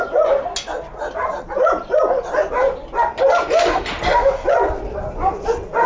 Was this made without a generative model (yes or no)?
yes